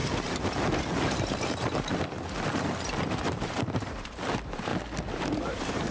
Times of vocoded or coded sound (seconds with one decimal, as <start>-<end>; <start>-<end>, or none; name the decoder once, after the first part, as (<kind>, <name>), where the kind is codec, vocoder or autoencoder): 3.1-4.7 (vocoder, BigVGAN v2); 5.4-5.9